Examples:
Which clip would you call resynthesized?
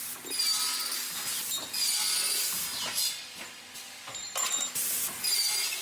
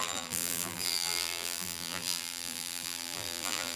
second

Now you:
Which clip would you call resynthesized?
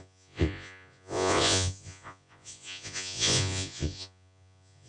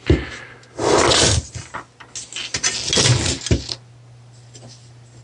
first